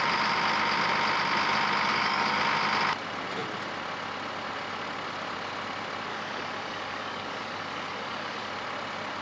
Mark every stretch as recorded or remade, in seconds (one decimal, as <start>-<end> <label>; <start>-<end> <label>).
0.0-1.9 recorded; 1.9-2.4 remade; 2.4-6.1 recorded; 6.1-8.5 remade; 8.5-9.2 recorded